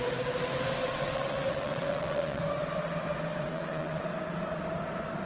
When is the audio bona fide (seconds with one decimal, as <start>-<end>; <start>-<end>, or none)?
0.0-0.8; 2.4-3.5; 4.0-5.3